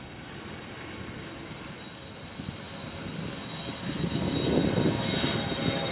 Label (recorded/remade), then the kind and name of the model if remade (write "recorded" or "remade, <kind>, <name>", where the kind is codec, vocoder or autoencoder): recorded